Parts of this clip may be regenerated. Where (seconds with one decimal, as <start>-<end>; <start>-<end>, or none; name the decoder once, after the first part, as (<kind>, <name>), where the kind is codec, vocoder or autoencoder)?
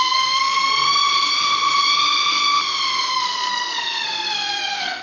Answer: 0.0-1.0 (codec, SNAC); 3.1-5.0